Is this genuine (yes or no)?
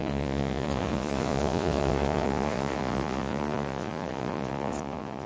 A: no